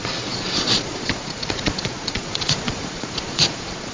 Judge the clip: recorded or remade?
remade